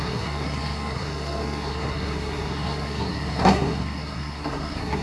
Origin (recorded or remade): remade